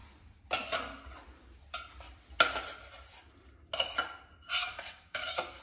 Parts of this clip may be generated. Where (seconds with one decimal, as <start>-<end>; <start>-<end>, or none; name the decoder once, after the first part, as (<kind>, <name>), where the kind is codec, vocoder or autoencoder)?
4.6-5.6 (codec, DAC)